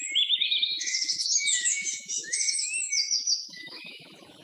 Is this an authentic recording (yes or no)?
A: no